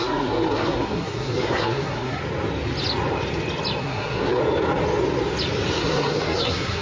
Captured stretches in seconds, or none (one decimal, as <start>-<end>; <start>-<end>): 2.2-3.8; 4.4-5.8